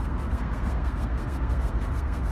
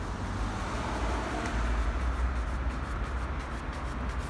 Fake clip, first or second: first